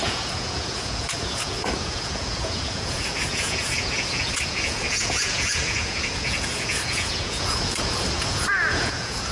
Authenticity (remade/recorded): remade